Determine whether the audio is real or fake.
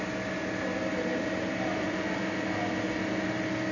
real